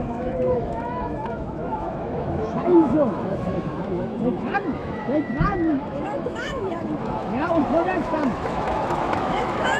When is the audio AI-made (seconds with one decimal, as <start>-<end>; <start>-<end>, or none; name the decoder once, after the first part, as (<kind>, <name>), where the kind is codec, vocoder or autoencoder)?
0.0-9.8 (autoencoder, DAC-VAE)